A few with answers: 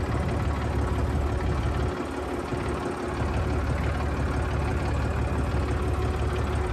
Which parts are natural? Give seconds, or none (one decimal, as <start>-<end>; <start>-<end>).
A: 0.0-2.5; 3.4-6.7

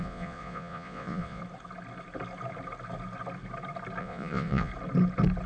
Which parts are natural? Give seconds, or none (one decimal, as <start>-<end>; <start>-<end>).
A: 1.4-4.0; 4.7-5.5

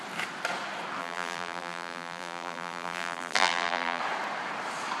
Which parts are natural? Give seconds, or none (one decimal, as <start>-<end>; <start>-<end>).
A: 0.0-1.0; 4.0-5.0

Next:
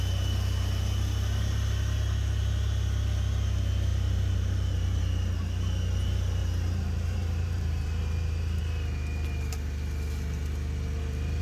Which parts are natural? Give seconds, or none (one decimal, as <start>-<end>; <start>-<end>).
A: 0.0-3.9; 5.0-6.4; 8.6-11.4

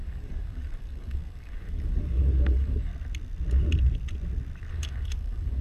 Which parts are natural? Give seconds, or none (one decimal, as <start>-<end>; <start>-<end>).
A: 2.9-4.7

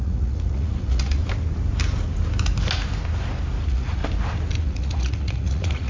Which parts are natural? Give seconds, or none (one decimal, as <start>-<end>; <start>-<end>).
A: 1.2-3.6; 4.0-4.6

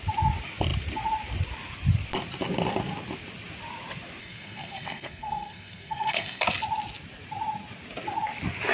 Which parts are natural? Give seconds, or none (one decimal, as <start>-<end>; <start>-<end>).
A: 0.0-4.2; 6.4-8.7